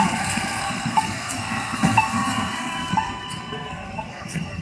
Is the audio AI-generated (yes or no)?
yes